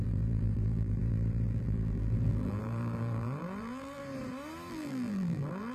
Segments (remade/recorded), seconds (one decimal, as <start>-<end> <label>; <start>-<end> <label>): 0.0-4.0 remade; 4.0-4.7 recorded; 4.7-5.7 remade